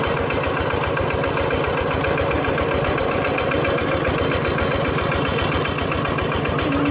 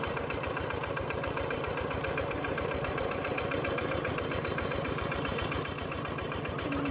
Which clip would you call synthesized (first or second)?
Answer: second